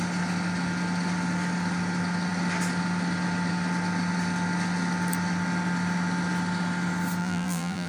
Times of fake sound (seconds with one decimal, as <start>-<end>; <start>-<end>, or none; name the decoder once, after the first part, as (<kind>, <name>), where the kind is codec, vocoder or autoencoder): 7.2-7.9 (vocoder, BigVGAN v2)